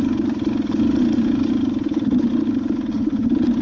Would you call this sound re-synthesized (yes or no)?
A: no